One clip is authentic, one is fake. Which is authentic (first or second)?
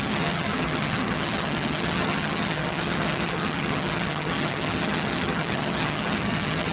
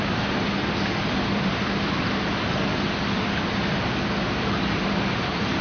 second